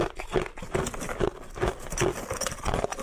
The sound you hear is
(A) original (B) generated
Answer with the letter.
A